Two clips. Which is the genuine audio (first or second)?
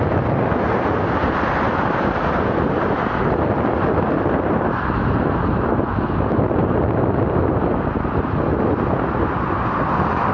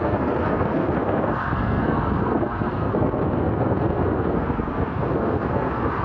first